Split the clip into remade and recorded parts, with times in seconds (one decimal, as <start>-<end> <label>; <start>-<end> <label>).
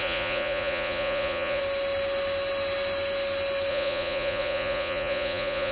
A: 0.0-1.6 remade; 1.6-3.7 recorded; 3.7-5.7 remade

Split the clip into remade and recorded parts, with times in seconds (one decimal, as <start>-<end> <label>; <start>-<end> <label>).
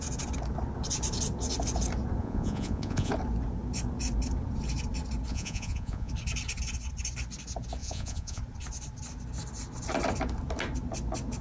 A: 0.0-2.2 recorded; 2.2-3.1 remade; 3.1-5.3 recorded; 5.3-6.1 remade; 6.1-7.8 recorded; 7.8-8.4 remade; 8.4-11.4 recorded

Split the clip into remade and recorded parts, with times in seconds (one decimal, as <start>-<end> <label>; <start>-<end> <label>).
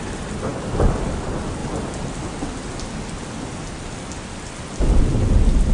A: 0.0-5.7 recorded